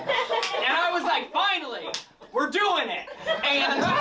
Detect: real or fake real